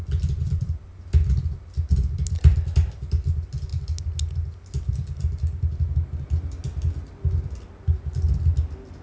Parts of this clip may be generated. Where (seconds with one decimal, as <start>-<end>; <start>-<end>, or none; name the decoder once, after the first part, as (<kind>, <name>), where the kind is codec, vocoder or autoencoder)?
none